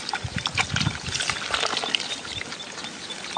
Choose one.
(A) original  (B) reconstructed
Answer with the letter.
A